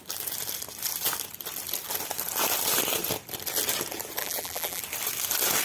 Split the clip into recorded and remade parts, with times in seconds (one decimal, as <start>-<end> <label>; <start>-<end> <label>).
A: 0.0-4.2 recorded; 4.2-4.8 remade; 4.8-5.6 recorded